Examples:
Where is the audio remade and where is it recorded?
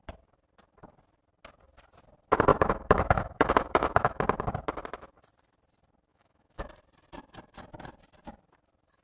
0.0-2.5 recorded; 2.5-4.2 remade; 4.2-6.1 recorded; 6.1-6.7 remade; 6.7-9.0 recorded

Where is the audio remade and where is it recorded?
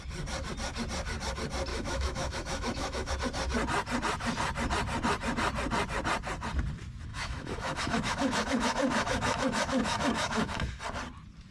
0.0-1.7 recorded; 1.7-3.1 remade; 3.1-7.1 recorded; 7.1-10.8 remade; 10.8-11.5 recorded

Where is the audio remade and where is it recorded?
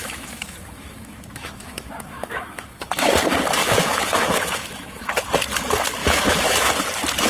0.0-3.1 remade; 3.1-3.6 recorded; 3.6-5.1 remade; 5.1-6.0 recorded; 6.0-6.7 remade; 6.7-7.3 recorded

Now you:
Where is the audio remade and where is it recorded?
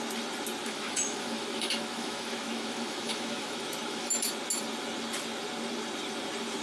0.0-0.6 recorded; 0.6-4.3 remade; 4.3-6.6 recorded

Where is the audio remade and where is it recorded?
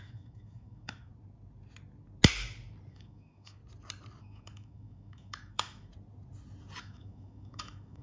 0.0-1.1 remade; 1.1-2.9 recorded; 2.9-3.6 remade; 3.6-4.2 recorded; 4.2-5.9 remade; 5.9-6.8 recorded; 6.8-8.0 remade